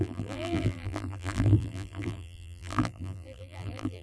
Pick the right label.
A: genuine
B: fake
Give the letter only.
B